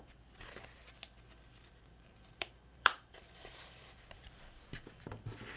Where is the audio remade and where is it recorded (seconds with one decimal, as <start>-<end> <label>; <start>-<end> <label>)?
0.0-1.5 recorded; 1.5-4.9 remade; 4.9-5.6 recorded